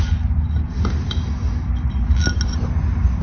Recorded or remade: recorded